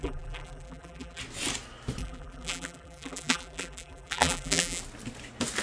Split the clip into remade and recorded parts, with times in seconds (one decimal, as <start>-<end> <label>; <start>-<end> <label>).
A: 0.0-1.2 remade; 1.2-2.0 recorded; 2.0-4.8 remade; 4.8-5.6 recorded